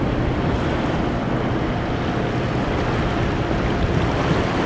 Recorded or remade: recorded